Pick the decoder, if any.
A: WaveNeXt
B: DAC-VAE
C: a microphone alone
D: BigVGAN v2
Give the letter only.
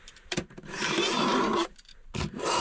D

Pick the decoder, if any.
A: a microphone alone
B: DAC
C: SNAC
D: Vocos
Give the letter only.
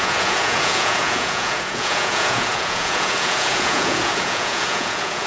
D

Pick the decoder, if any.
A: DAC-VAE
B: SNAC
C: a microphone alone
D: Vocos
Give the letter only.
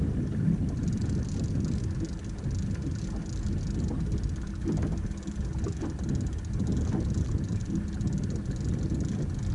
C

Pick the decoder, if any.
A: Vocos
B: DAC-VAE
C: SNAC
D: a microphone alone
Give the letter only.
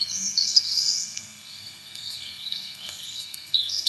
C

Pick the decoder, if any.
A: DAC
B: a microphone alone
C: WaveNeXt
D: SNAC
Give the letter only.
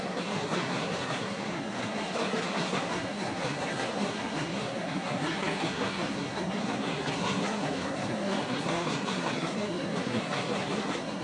D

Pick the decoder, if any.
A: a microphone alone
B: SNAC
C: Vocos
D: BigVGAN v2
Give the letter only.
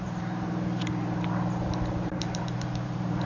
D